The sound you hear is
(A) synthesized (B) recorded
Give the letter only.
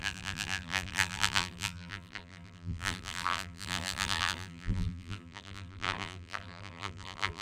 A